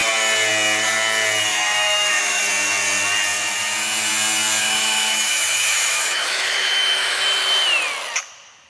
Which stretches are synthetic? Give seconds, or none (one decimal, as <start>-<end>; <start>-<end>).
1.5-2.4; 4.6-7.2